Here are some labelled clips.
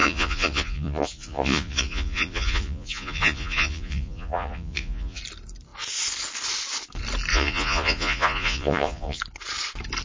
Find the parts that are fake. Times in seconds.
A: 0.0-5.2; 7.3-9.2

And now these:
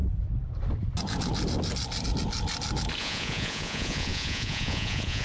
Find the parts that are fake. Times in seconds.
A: 3.0-5.2

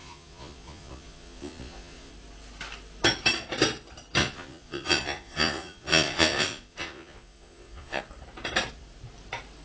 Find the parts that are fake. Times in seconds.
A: 0.0-2.1; 4.2-8.0